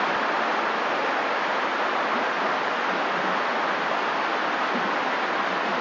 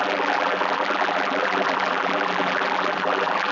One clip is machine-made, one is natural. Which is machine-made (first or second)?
second